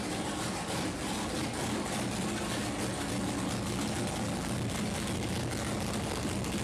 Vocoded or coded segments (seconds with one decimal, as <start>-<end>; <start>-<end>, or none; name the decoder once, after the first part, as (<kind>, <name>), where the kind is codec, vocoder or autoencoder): none